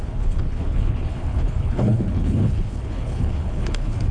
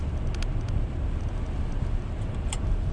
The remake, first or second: first